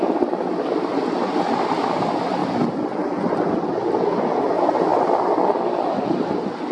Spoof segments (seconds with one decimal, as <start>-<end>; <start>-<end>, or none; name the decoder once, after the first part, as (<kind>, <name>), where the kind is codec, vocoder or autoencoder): none